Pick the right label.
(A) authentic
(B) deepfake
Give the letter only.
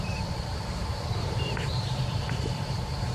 B